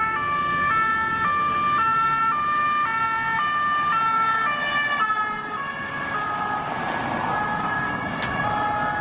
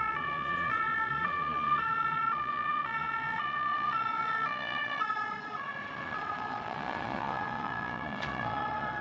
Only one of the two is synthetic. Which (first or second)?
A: second